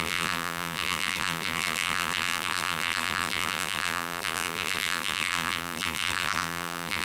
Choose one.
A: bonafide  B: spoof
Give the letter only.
B